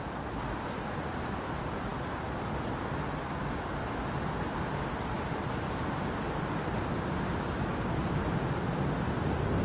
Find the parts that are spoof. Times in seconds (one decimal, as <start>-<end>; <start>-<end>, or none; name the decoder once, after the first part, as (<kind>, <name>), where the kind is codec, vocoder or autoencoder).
none